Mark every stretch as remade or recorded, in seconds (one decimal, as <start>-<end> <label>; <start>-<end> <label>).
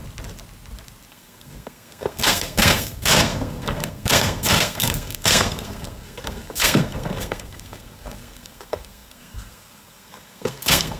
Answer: 0.0-1.1 recorded; 1.1-11.0 remade